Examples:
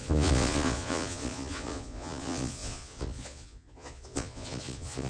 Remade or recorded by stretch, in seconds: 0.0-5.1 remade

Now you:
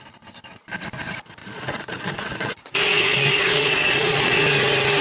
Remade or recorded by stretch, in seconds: 0.0-1.4 recorded; 1.4-4.4 remade; 4.4-5.0 recorded

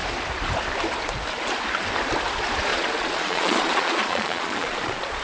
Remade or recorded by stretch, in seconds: 0.0-2.7 recorded; 2.7-5.2 remade

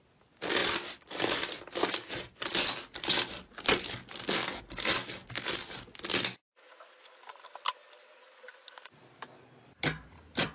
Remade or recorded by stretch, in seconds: 0.0-10.5 recorded